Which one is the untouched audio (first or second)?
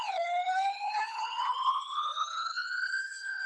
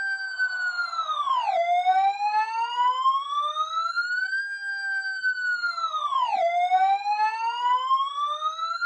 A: second